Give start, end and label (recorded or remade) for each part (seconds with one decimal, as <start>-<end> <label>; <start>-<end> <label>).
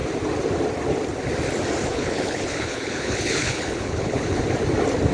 0.0-1.9 recorded; 1.9-4.4 remade; 4.4-5.1 recorded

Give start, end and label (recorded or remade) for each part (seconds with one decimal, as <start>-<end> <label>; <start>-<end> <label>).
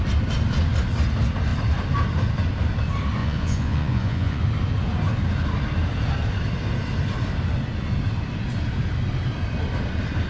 0.0-3.2 recorded; 3.2-4.4 remade; 4.4-10.3 recorded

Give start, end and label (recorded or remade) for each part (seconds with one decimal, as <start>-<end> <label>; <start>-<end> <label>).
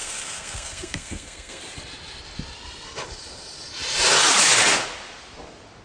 0.0-1.6 remade; 1.6-5.8 recorded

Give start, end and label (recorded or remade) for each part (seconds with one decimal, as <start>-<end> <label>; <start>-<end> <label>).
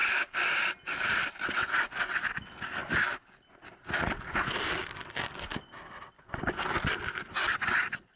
0.0-8.2 recorded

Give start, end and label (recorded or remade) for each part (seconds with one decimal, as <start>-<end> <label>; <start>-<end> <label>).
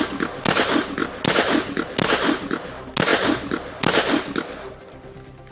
0.0-5.5 recorded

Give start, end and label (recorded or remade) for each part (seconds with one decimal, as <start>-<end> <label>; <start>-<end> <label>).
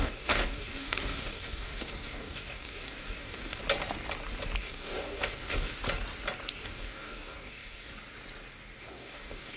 0.0-3.6 remade; 3.6-4.6 recorded; 4.6-5.8 remade; 5.8-6.6 recorded; 6.6-7.9 remade; 7.9-8.8 recorded; 8.8-9.6 remade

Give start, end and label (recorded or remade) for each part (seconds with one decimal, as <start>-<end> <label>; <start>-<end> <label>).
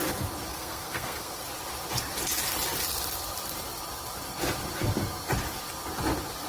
0.0-0.5 recorded; 0.5-1.4 remade; 1.4-6.5 recorded